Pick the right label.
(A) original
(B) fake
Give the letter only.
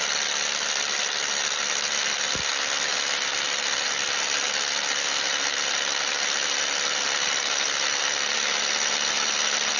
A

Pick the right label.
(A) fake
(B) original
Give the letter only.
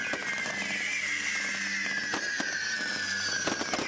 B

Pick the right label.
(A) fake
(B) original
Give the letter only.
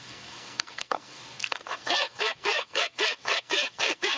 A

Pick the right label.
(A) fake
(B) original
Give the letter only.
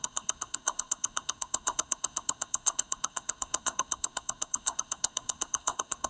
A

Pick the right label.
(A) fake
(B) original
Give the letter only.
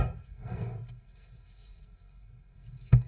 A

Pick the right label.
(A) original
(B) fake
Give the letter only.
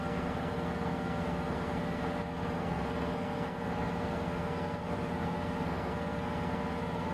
B